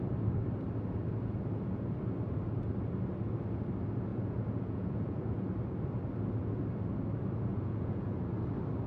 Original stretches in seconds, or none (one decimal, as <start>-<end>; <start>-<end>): 0.0-4.1; 5.2-7.5; 8.1-8.9